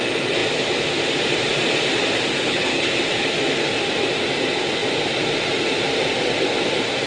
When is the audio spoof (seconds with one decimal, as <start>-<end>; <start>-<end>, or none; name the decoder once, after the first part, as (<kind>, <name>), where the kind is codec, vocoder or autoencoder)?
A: 2.4-2.9 (codec, HILCodec)